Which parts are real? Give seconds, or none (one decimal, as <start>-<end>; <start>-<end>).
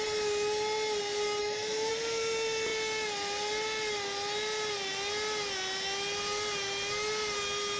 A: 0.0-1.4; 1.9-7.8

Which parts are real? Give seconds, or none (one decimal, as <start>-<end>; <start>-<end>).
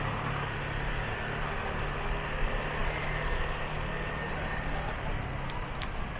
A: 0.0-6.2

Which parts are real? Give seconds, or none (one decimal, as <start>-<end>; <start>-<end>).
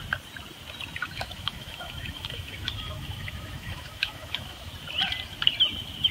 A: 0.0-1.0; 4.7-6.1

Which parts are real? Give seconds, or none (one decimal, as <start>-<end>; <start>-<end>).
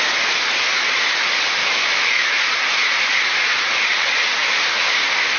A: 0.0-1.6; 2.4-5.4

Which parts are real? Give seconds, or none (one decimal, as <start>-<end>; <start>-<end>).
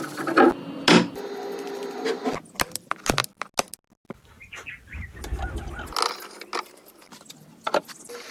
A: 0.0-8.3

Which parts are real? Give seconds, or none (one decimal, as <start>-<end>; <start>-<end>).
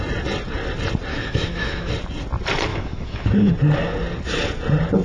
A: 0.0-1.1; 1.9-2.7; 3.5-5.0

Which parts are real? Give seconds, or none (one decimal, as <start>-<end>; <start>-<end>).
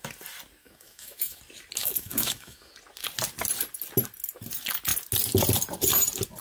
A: 0.0-0.6; 1.4-1.8; 2.7-6.4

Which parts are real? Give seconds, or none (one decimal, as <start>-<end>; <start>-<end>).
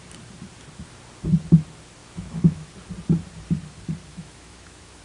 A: 0.0-2.0; 2.7-4.1